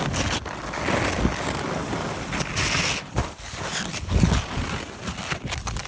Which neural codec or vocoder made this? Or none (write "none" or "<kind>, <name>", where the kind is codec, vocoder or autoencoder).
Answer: none